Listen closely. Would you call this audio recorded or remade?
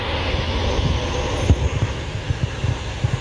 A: recorded